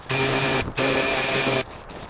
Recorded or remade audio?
remade